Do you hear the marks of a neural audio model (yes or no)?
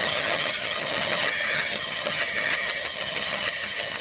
yes